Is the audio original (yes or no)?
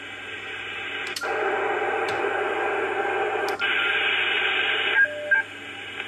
yes